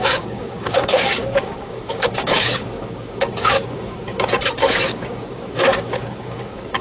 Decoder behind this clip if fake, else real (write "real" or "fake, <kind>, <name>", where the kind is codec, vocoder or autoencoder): fake, codec, DAC